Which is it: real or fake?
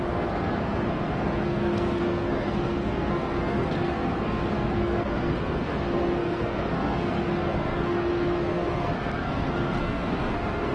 fake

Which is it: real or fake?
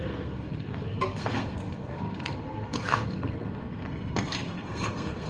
fake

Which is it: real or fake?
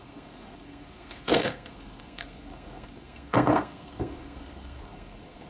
fake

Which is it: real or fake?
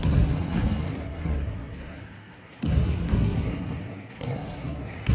fake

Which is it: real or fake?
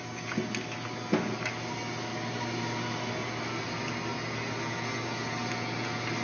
real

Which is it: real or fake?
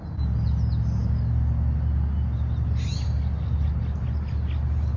real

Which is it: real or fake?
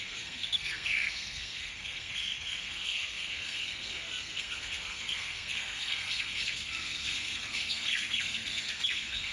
fake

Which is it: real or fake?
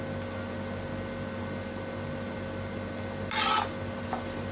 real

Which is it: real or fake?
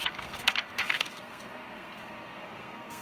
fake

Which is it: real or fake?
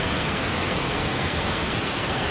fake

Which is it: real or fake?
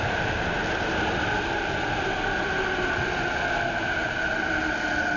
real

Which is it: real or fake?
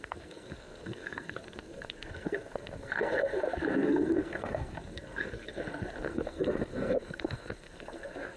fake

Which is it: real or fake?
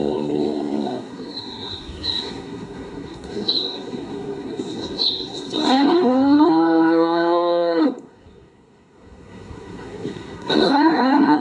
fake